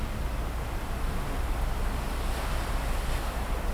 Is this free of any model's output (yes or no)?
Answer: yes